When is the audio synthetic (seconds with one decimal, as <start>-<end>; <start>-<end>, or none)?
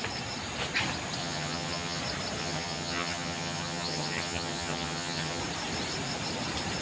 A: 1.2-2.0; 2.4-5.4